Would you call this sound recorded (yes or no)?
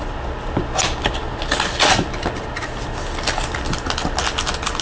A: yes